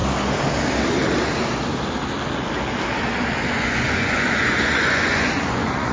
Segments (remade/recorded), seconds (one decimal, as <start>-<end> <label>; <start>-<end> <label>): 0.0-3.5 recorded; 3.5-5.9 remade